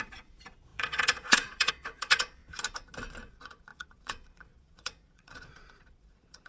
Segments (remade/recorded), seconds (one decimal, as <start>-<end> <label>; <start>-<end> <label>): 0.0-2.4 remade; 2.4-3.3 recorded; 3.3-6.5 remade